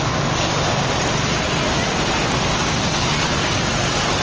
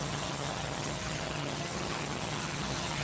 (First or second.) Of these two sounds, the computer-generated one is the second